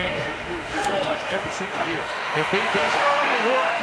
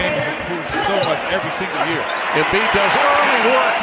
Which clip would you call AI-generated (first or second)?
first